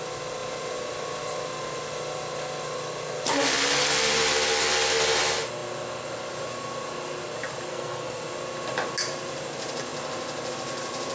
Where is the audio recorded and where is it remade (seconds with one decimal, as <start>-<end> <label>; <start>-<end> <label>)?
0.0-7.7 recorded; 7.7-8.2 remade; 8.2-11.1 recorded

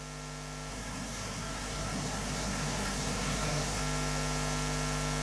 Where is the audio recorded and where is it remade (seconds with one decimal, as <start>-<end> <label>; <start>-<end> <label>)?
0.0-0.7 recorded; 0.7-3.8 remade; 3.8-5.2 recorded

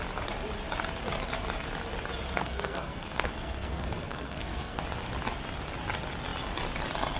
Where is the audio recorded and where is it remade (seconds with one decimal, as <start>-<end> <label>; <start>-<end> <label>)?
0.0-2.4 recorded; 2.4-4.8 remade; 4.8-7.2 recorded

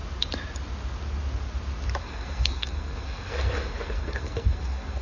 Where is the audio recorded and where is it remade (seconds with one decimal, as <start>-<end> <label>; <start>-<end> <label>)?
0.0-2.0 recorded; 2.0-5.0 remade

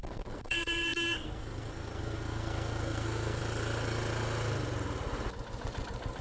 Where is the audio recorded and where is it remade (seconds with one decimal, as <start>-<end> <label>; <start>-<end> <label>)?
0.0-3.4 remade; 3.4-6.2 recorded

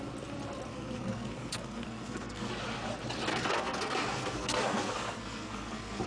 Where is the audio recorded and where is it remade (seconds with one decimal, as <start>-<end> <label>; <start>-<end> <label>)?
0.0-0.7 recorded; 0.7-2.5 remade; 2.5-3.3 recorded; 3.3-6.1 remade

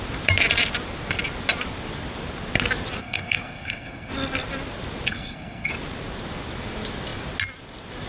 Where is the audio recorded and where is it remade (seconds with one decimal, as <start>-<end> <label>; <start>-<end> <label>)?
0.0-3.0 recorded; 3.0-4.1 remade; 4.1-5.1 recorded; 5.1-5.7 remade; 5.7-8.1 recorded

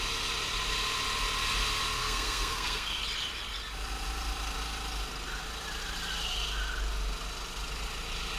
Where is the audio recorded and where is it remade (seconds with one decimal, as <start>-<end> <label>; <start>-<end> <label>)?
0.0-2.0 recorded; 2.0-3.0 remade; 3.0-8.4 recorded